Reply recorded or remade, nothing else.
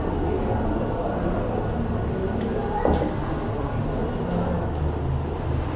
recorded